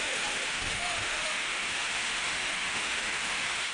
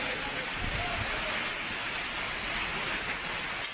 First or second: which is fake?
first